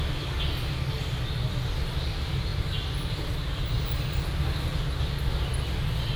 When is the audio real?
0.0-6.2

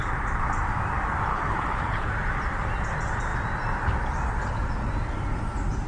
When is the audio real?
0.0-1.3; 2.1-5.9

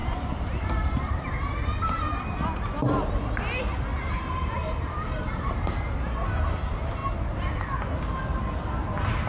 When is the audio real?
2.3-3.9; 5.7-9.3